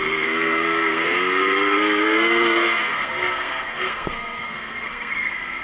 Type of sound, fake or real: fake